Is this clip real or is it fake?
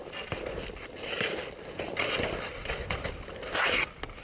real